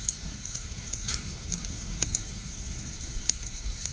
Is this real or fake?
fake